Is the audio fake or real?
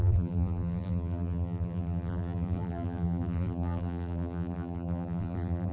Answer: fake